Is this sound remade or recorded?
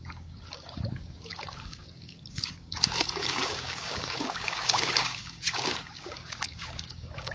remade